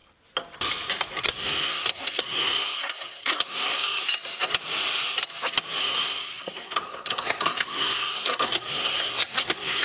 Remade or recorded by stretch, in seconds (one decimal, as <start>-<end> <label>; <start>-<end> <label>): 0.0-1.2 recorded; 1.2-4.0 remade; 4.0-5.8 recorded; 5.8-9.8 remade